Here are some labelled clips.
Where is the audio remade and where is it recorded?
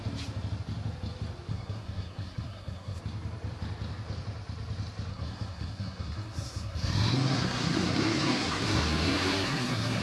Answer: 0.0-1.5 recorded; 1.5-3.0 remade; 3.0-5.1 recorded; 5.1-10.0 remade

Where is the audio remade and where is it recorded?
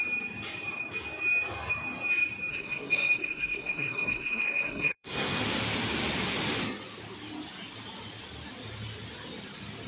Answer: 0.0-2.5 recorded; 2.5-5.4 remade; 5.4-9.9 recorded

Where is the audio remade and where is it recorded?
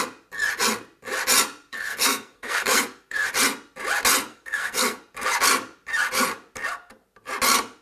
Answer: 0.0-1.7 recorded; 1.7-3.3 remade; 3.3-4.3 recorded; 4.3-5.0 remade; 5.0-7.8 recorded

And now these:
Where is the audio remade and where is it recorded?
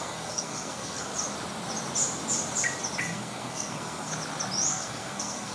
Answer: 0.0-1.1 remade; 1.1-3.0 recorded; 3.0-4.1 remade; 4.1-4.7 recorded; 4.7-5.5 remade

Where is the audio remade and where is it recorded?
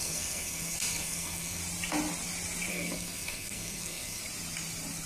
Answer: 0.0-1.6 remade; 1.6-2.7 recorded; 2.7-4.2 remade; 4.2-5.1 recorded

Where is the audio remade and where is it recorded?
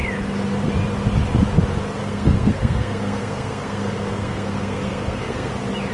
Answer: 0.0-2.0 recorded; 2.0-5.5 remade; 5.5-5.9 recorded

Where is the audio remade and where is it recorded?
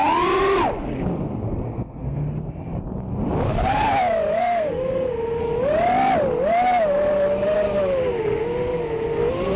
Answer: 0.0-1.7 recorded; 1.7-2.5 remade; 2.5-4.4 recorded; 4.4-5.4 remade; 5.4-9.6 recorded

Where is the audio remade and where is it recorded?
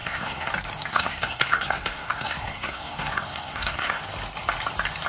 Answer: 0.0-0.5 remade; 0.5-0.9 recorded; 0.9-4.0 remade; 4.0-5.1 recorded